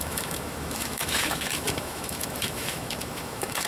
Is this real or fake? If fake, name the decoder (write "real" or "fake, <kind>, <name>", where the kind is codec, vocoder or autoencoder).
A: fake, autoencoder, DAC-VAE